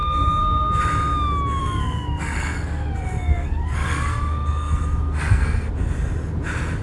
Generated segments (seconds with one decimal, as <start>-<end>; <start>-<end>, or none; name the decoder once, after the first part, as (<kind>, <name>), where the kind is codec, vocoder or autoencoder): 0.0-0.8 (codec, SNAC); 1.6-5.7